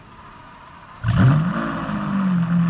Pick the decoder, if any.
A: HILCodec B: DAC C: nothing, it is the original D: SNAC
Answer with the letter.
C